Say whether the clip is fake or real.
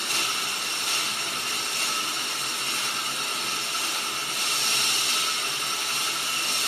real